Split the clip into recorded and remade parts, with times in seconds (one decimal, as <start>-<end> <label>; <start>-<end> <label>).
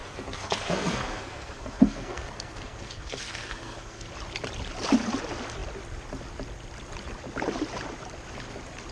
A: 0.0-4.1 remade; 4.1-8.9 recorded